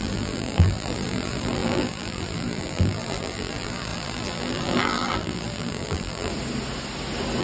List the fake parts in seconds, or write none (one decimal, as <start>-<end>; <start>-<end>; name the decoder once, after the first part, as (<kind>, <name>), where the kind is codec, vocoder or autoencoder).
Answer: 0.0-6.3 (vocoder, BigVGAN v2)